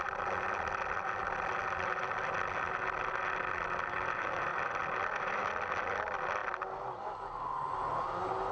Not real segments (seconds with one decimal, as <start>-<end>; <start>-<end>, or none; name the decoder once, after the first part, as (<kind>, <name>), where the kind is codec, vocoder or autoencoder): none